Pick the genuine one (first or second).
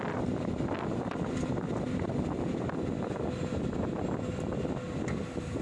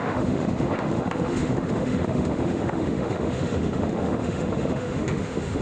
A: first